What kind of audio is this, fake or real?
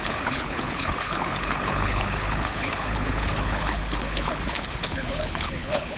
fake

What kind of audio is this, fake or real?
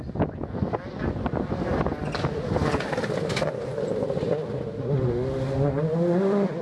real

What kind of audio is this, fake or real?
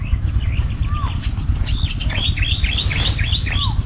real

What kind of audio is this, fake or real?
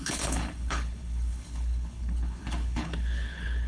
fake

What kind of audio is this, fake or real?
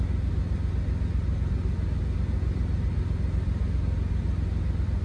real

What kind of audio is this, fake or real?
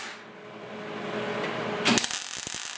real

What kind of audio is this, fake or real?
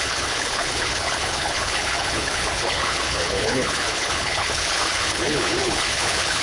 fake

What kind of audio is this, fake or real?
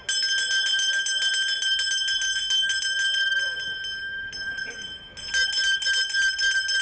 real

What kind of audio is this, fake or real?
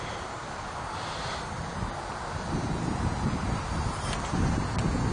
real